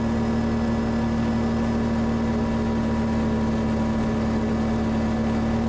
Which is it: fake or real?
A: real